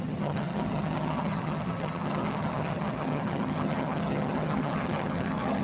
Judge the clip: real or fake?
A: fake